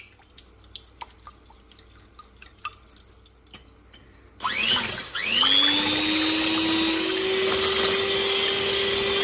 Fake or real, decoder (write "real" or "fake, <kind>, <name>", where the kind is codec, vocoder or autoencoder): real